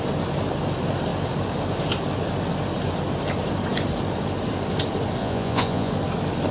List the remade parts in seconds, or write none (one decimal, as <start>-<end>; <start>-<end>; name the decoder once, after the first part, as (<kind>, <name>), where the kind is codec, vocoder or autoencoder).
5.2-5.9 (vocoder, Vocos)